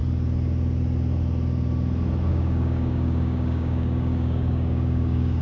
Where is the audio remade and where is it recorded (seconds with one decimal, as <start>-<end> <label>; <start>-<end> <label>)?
0.0-2.3 recorded; 2.3-5.4 remade